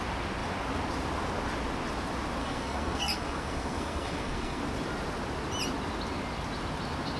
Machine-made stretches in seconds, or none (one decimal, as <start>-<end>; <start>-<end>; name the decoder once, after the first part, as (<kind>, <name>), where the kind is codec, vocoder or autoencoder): 2.4-4.6 (codec, SNAC)